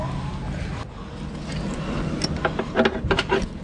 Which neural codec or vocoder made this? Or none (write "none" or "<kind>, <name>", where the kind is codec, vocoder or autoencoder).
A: none